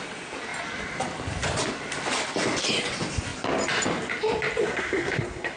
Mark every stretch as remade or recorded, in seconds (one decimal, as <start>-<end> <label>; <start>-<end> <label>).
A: 0.0-4.6 recorded; 4.6-5.6 remade